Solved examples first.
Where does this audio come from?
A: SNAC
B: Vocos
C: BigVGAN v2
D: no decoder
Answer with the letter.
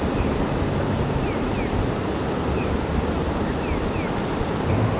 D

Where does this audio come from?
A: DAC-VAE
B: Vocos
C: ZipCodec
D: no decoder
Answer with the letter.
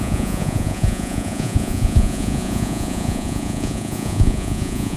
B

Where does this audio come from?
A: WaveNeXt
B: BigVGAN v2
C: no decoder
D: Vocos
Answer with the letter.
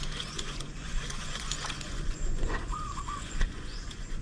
D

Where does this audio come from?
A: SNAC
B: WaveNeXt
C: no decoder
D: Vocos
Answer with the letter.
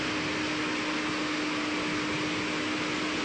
C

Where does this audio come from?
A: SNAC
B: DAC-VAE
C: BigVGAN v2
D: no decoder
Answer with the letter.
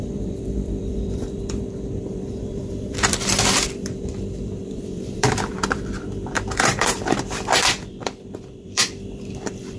C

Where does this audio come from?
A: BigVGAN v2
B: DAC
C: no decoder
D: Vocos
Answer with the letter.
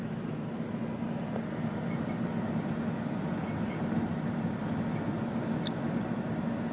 C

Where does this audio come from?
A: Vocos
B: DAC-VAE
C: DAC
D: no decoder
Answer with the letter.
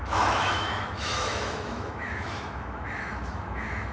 B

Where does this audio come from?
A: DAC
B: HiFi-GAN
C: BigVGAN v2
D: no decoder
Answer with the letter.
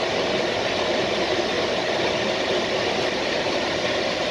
D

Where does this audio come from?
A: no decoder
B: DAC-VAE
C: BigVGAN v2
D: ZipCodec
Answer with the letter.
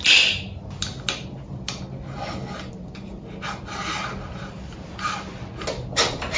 A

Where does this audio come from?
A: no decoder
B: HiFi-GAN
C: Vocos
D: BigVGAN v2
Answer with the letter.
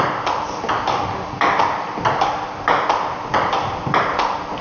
A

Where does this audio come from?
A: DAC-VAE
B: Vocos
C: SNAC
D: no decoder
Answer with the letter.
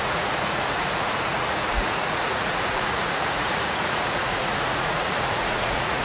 B